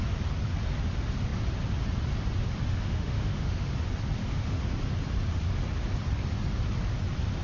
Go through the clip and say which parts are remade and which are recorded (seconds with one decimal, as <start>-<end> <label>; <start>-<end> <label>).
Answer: 0.0-2.8 recorded; 2.8-3.7 remade; 3.7-4.2 recorded; 4.2-4.7 remade; 4.7-7.4 recorded